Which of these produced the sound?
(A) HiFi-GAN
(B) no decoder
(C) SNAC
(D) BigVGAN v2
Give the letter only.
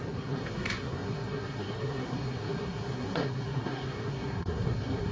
C